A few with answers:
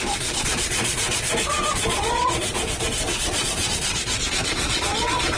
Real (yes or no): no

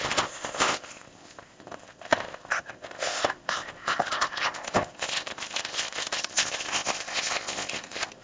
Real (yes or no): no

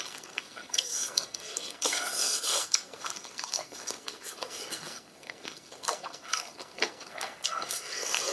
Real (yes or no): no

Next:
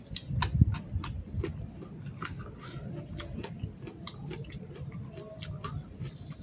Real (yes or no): yes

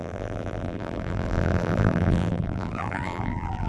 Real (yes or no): no